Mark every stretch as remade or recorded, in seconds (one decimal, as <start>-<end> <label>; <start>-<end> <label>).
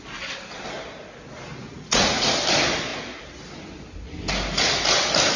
0.0-1.6 recorded; 1.6-2.3 remade; 2.3-5.4 recorded